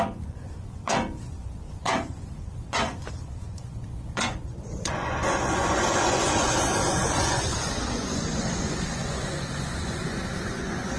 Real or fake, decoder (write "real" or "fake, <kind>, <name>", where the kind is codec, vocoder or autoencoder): fake, vocoder, Vocos